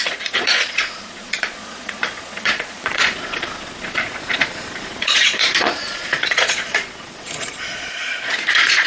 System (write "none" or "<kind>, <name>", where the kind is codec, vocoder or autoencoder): vocoder, Vocos